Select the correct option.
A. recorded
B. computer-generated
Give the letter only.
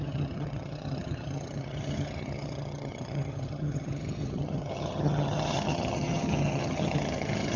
B